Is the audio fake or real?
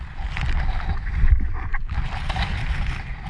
real